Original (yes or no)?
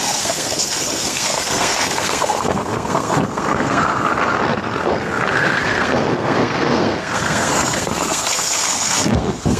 no